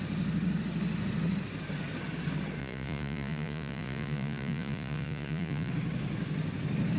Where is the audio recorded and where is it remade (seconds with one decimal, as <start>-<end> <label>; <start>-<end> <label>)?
0.0-2.6 recorded; 2.6-5.7 remade; 5.7-7.0 recorded